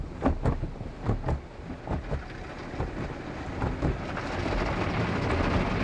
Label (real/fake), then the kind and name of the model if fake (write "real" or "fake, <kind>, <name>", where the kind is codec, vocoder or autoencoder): real